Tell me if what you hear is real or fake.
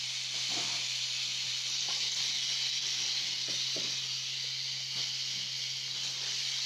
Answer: real